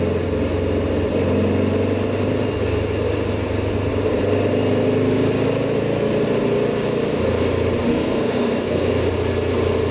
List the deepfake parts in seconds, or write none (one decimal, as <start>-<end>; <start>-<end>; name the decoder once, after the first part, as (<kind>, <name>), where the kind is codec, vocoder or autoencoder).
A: 7.9-8.9 (codec, SNAC)